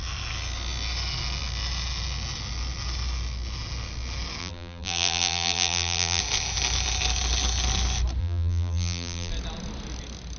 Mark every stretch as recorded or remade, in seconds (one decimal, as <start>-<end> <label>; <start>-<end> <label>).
0.0-4.4 recorded; 4.4-6.2 remade; 6.2-8.2 recorded; 8.2-9.3 remade; 9.3-10.4 recorded